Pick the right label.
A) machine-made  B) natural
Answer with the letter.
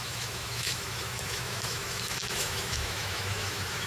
A